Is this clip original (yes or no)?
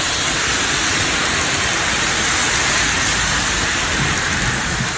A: yes